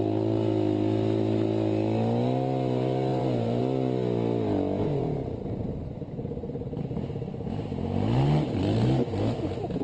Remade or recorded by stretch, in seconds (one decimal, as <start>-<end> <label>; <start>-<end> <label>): 0.0-3.1 recorded; 3.1-3.6 remade; 3.6-9.8 recorded